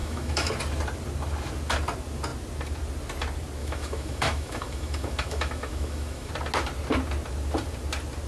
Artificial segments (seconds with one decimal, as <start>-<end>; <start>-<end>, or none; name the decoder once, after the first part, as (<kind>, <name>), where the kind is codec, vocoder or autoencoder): 0.0-0.5 (autoencoder, DAC-VAE); 3.6-6.3